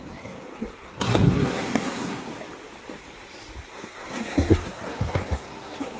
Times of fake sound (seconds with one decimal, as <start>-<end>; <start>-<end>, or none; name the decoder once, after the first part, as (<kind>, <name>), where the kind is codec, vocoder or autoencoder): 0.0-2.3 (codec, SNAC); 3.7-6.0